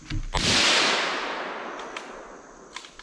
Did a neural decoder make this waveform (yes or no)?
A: no